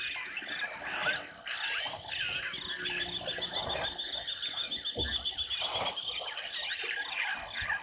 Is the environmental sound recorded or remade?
recorded